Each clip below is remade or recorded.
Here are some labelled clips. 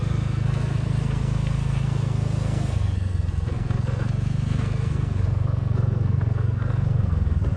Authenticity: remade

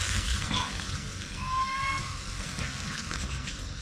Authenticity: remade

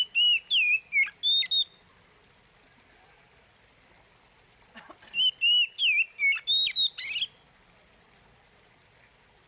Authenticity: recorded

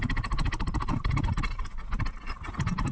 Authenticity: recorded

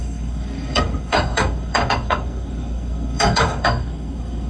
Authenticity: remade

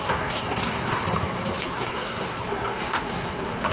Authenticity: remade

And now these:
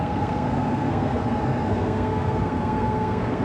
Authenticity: remade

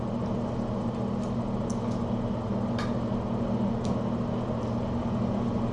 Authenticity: recorded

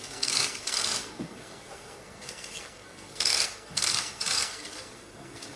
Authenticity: remade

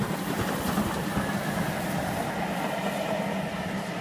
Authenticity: recorded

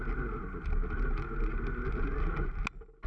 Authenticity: recorded